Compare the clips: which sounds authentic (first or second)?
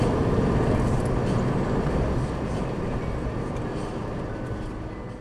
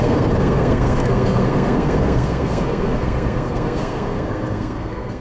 first